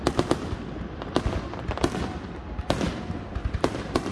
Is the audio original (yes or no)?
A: yes